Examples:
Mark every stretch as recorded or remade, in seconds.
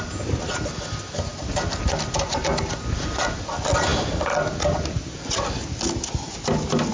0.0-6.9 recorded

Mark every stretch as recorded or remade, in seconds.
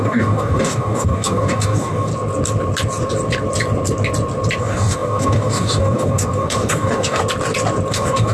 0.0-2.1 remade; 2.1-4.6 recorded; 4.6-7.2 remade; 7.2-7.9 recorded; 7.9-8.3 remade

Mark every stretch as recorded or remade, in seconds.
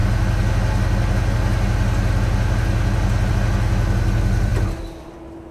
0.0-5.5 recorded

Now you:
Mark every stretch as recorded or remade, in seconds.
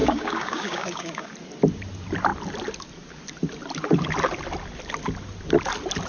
0.0-1.3 remade; 1.3-6.1 recorded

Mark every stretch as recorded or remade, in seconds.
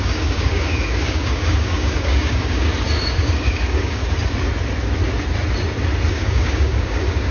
0.0-2.7 remade; 2.7-3.2 recorded; 3.2-4.0 remade; 4.0-6.1 recorded; 6.1-7.3 remade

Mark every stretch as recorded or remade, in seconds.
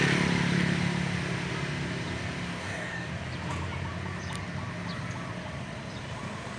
0.0-2.6 recorded; 2.6-3.1 remade; 3.1-6.6 recorded